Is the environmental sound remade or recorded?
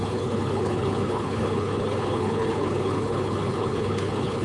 remade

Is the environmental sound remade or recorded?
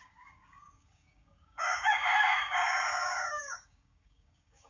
remade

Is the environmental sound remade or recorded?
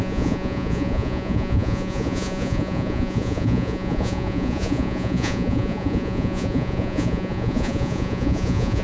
remade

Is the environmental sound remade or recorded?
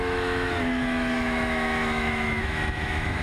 remade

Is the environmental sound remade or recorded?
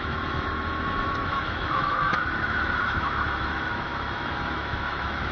remade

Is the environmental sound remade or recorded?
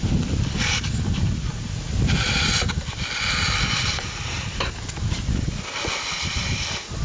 recorded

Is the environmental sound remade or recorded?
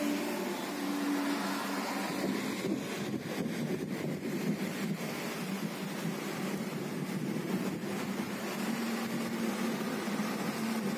recorded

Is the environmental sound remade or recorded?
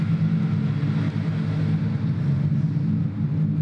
recorded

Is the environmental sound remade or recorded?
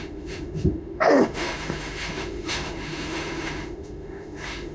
remade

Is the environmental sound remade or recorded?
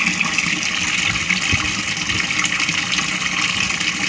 recorded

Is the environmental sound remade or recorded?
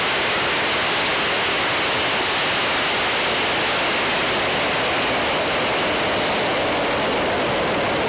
recorded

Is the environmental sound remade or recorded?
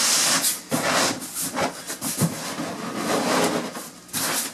recorded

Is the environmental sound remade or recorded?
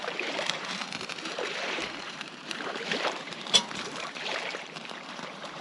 remade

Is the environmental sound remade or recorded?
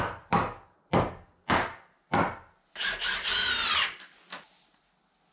recorded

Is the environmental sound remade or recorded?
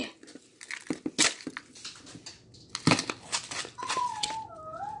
recorded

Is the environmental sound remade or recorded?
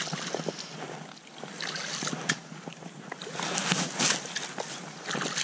recorded